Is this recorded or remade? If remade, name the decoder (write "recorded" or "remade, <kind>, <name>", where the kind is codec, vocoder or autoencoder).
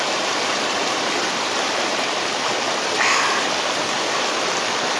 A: remade, vocoder, BigVGAN v2